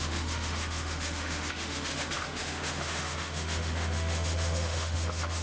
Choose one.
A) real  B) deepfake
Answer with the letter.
B